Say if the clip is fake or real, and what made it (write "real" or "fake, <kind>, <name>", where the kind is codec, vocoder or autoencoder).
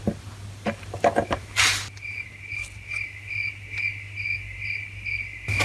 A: real